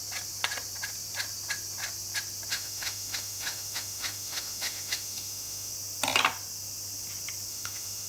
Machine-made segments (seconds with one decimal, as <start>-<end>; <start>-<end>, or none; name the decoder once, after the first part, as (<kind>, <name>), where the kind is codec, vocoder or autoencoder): 2.5-5.7 (autoencoder, DAC-VAE); 7.5-8.1

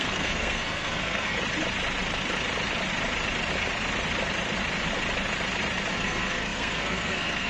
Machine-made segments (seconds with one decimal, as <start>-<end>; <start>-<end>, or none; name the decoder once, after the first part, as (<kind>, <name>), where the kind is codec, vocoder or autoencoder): 0.0-1.4 (codec, SNAC); 5.9-7.5

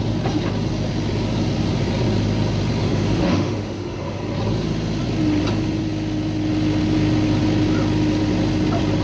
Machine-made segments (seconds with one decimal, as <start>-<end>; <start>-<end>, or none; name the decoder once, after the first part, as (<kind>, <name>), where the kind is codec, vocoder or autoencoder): 2.8-4.2 (autoencoder, DAC-VAE)

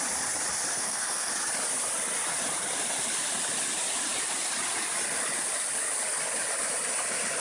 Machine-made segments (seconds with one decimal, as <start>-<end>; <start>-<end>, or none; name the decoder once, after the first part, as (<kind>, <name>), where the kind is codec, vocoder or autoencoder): 0.7-1.3 (codec, SNAC)

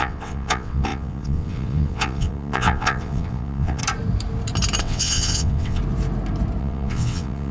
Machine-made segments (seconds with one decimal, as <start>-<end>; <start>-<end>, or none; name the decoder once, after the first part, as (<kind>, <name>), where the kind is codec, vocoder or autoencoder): 0.0-3.8 (vocoder, WaveNeXt); 4.8-5.8; 6.6-7.5

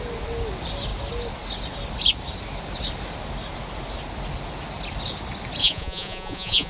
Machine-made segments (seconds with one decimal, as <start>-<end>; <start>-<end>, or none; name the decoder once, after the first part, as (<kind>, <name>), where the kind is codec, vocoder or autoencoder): 5.6-6.7 (vocoder, Vocos)

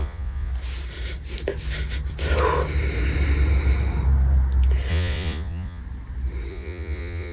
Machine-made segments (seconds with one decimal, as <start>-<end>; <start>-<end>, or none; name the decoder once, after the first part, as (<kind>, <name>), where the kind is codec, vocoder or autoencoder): 0.0-0.5 (vocoder, Vocos); 4.9-5.8; 6.5-7.3